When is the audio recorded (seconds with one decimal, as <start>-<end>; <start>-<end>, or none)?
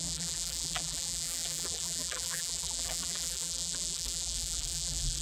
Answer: none